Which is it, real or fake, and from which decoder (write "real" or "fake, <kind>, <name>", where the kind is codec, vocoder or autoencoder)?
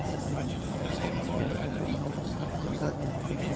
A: fake, vocoder, HiFi-GAN